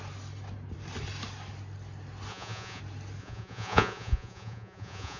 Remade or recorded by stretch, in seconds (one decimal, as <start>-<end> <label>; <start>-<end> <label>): 0.0-2.3 recorded; 2.3-2.8 remade; 2.8-3.2 recorded; 3.2-5.2 remade